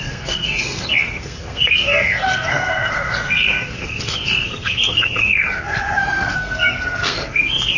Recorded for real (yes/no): no